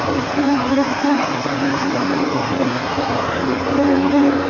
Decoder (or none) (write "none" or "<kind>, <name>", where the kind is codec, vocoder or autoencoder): codec, SNAC